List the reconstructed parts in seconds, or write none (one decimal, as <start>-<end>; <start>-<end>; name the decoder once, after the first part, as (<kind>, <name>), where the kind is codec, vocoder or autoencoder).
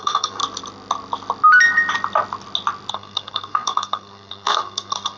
0.0-0.4 (codec, SNAC); 2.9-5.2